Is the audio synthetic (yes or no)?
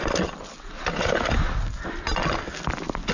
no